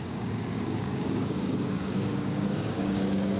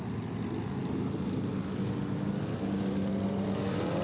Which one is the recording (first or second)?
second